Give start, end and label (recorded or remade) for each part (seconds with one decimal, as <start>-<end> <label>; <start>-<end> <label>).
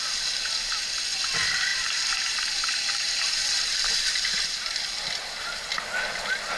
0.0-1.7 recorded; 1.7-5.7 remade; 5.7-6.6 recorded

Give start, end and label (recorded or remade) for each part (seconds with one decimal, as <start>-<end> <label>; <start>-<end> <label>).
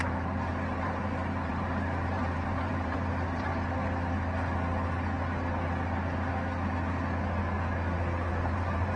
0.0-3.5 remade; 3.5-8.3 recorded; 8.3-9.0 remade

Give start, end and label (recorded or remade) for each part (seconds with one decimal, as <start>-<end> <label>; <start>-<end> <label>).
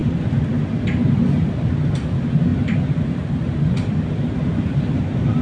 0.0-2.5 remade; 2.5-5.0 recorded; 5.0-5.4 remade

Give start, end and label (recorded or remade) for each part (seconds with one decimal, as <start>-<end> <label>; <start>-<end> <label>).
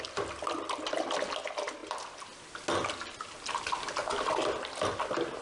0.0-5.4 recorded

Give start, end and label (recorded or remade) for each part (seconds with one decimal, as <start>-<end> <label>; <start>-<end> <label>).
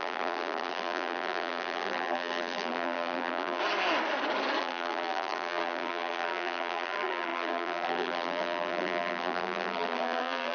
0.0-3.6 remade; 3.6-4.6 recorded; 4.6-10.5 remade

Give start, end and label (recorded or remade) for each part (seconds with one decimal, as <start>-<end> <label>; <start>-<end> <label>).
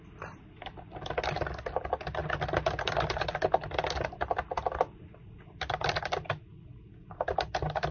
0.0-7.9 recorded